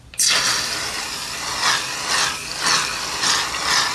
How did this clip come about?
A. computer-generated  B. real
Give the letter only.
B